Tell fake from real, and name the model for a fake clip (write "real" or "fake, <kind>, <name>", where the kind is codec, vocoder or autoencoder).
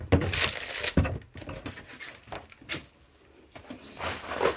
real